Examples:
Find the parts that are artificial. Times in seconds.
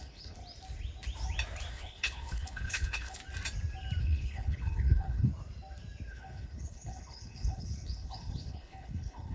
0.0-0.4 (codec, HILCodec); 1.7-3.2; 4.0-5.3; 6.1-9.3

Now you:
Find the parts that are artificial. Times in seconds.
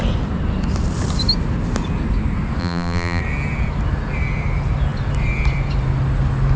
2.6-3.2 (vocoder, BigVGAN v2)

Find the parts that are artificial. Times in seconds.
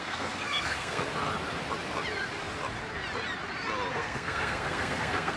0.0-1.1 (codec, SNAC); 3.9-5.4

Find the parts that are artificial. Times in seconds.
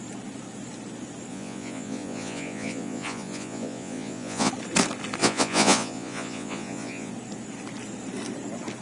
1.3-4.5 (vocoder, Vocos); 5.2-7.1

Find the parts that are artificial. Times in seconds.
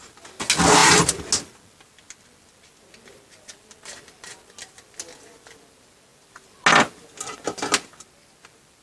none